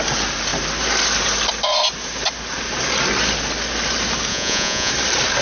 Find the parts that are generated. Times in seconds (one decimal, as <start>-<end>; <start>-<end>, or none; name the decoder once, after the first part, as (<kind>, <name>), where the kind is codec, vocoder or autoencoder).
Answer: 4.3-4.9 (vocoder, Vocos)